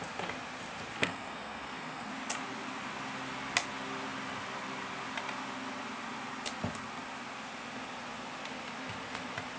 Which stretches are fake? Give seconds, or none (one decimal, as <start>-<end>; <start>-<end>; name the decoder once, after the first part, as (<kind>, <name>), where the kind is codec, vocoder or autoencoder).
1.0-2.1 (codec, SNAC)